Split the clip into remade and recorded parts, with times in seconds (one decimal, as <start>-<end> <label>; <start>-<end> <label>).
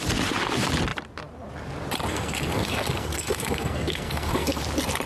0.0-2.1 recorded; 2.1-4.6 remade; 4.6-5.1 recorded